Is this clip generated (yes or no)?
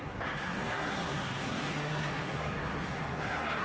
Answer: yes